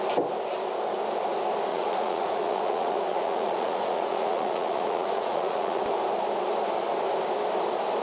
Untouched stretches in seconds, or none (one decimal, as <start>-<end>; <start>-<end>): 0.0-1.7; 5.8-8.0